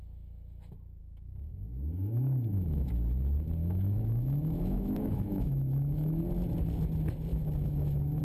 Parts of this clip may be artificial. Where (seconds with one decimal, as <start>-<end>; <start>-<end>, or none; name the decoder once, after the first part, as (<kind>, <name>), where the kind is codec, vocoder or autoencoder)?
1.0-2.9 (autoencoder, DAC-VAE); 3.6-6.2; 7.3-8.2